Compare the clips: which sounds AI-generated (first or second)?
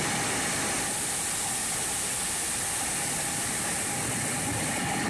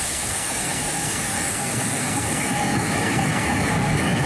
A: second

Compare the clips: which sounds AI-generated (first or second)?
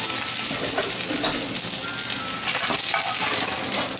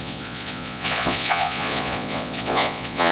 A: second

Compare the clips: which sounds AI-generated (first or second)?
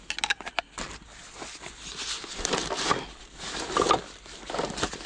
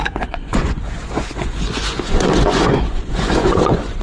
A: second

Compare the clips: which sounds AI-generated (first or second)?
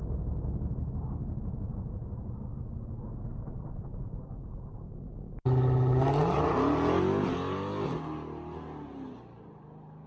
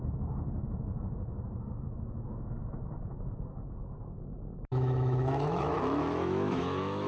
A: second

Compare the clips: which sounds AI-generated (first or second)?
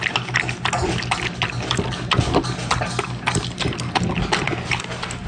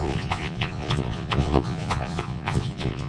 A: second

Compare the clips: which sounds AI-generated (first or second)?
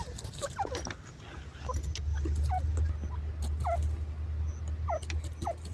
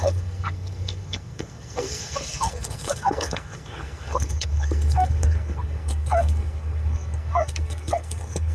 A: second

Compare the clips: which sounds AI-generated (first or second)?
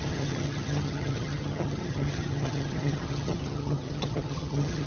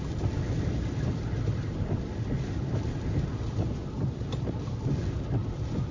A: first